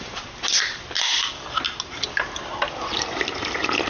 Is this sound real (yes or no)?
yes